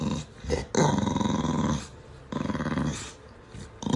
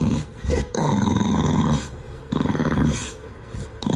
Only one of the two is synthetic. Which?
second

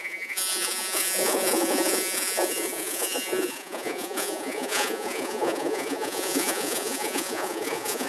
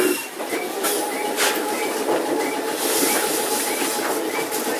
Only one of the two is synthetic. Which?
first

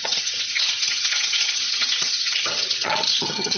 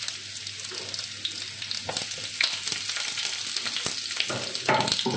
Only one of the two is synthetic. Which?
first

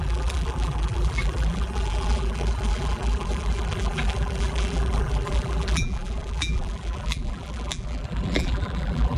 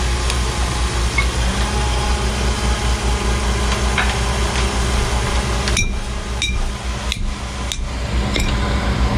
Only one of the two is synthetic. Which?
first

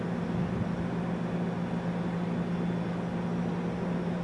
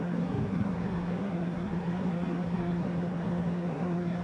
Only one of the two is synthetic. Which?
second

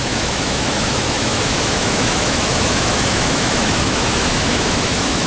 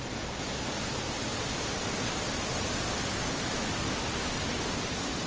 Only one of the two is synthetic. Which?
first